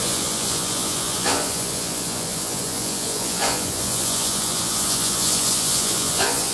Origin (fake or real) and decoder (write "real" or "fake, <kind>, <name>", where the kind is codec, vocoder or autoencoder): fake, vocoder, Vocos